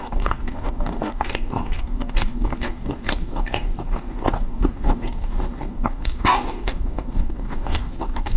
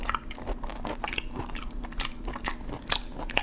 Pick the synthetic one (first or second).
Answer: first